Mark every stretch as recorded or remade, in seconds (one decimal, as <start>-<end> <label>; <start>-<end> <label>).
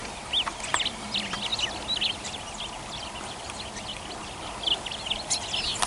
0.0-5.9 recorded